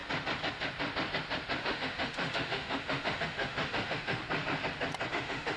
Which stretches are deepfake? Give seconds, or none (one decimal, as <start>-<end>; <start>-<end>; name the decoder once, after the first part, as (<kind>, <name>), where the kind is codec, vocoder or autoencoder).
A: 1.6-4.2 (autoencoder, DAC-VAE); 5.1-5.6

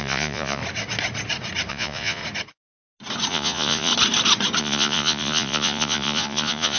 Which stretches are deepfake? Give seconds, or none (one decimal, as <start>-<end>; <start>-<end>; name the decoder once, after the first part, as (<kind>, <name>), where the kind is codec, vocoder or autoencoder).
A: 0.0-0.6 (vocoder, Vocos); 1.7-2.2; 3.3-3.9; 4.6-6.8

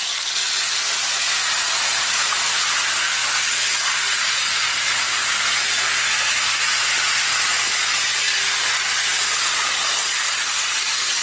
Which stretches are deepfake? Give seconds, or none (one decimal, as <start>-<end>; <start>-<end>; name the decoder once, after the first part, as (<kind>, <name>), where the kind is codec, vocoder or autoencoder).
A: none

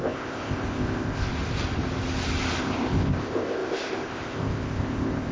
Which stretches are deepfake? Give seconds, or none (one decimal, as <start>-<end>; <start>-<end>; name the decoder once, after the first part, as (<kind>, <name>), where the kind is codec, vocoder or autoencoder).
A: 0.0-1.3 (codec, ZipCodec); 2.6-5.3

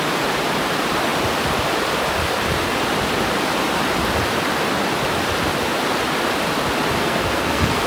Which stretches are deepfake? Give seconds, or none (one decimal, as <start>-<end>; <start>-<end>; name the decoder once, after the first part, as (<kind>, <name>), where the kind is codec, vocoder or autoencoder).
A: 7.0-7.9 (codec, SNAC)